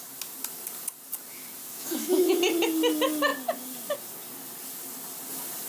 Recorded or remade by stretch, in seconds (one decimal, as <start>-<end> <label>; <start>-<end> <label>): 0.0-1.6 recorded; 1.6-2.4 remade; 2.4-5.7 recorded